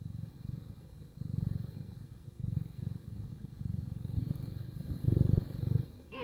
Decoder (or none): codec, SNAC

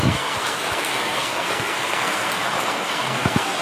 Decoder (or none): codec, SNAC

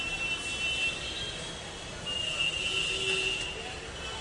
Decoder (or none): none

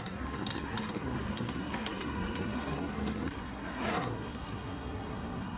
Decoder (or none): codec, SNAC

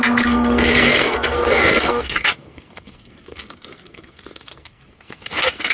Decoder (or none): codec, SNAC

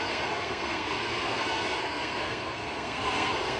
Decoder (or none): codec, SNAC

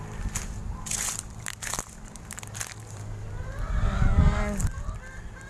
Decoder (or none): none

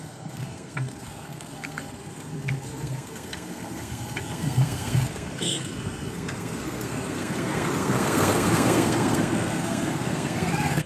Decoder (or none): codec, SNAC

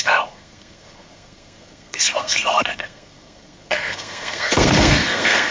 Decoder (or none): codec, SNAC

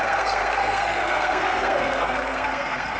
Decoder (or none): codec, SNAC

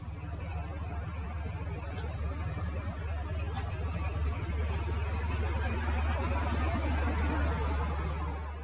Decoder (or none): none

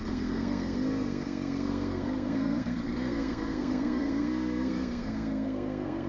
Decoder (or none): codec, SNAC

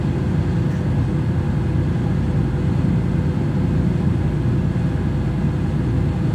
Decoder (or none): none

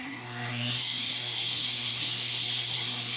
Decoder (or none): codec, SNAC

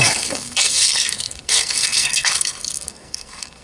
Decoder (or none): codec, SNAC